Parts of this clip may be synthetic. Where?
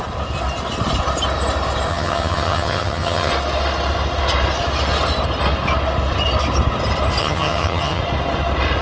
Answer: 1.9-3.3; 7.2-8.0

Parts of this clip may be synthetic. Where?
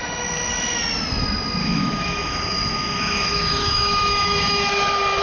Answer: 1.6-4.7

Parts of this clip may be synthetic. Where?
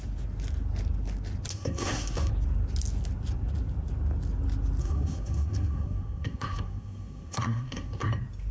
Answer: 1.5-2.3; 4.8-8.1